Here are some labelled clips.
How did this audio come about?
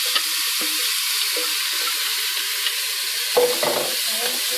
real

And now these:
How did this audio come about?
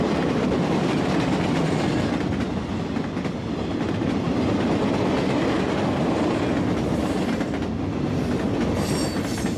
real